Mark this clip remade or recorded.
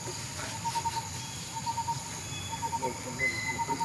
recorded